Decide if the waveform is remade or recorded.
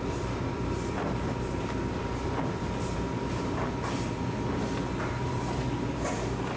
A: remade